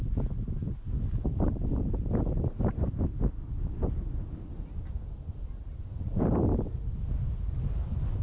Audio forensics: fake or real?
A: real